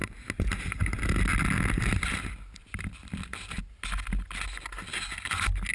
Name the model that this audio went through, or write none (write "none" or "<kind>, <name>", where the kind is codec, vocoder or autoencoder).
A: none